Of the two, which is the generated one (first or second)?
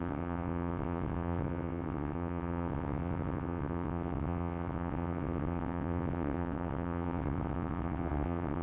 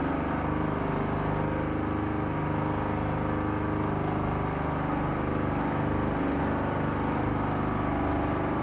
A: first